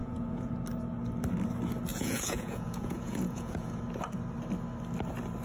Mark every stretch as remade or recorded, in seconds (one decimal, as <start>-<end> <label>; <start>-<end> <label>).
0.0-0.5 remade; 0.5-1.9 recorded; 1.9-3.8 remade; 3.8-5.4 recorded